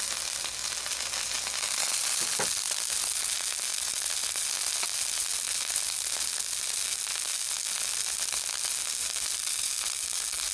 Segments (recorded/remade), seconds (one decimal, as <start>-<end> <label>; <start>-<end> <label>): 0.0-10.5 recorded

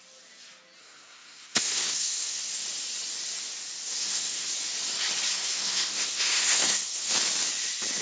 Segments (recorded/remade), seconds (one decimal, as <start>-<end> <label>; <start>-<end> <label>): 0.0-0.8 recorded; 0.8-2.5 remade; 2.5-4.0 recorded; 4.0-4.5 remade; 4.5-5.3 recorded; 5.3-7.1 remade; 7.1-8.0 recorded

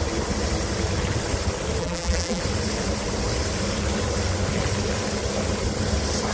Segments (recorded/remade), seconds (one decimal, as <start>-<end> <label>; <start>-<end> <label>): 0.0-1.8 recorded; 1.8-2.4 remade; 2.4-6.3 recorded